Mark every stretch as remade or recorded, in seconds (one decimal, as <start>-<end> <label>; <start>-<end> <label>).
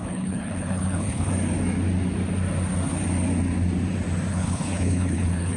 0.0-1.3 remade; 1.3-4.3 recorded; 4.3-5.6 remade